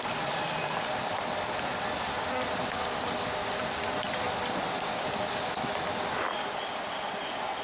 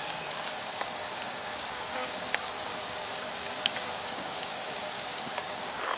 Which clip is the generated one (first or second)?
second